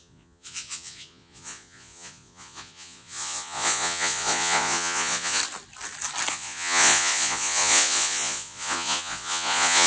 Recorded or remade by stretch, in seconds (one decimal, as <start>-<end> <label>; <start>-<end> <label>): 0.0-5.4 remade; 5.4-6.3 recorded; 6.3-9.9 remade